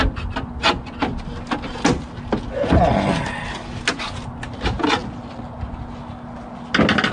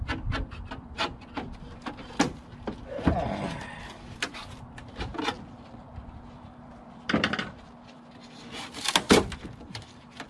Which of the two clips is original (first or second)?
first